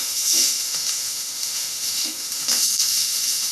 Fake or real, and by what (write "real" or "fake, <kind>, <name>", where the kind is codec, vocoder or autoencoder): fake, autoencoder, DAC-VAE